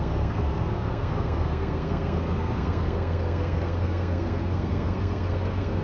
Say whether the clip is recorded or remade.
remade